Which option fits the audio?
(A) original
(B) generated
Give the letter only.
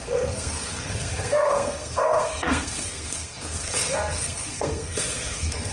B